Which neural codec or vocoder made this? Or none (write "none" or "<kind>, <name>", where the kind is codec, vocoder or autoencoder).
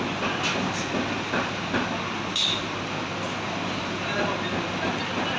none